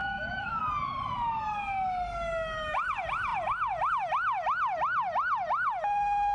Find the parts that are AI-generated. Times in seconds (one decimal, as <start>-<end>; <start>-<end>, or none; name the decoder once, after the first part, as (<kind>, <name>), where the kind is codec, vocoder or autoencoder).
0.0-0.6 (autoencoder, DAC-VAE)